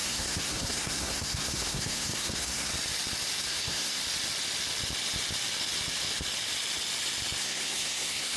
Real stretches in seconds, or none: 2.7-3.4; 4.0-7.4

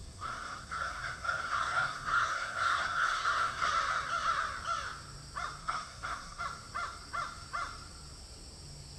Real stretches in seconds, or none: 3.7-5.6; 6.4-9.0

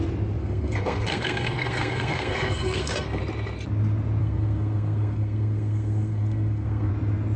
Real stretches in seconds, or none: 0.0-0.4; 3.2-4.2; 6.9-7.4

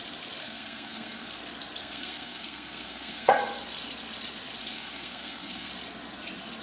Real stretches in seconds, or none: 0.0-0.4; 1.4-1.8; 3.4-4.6; 5.7-6.6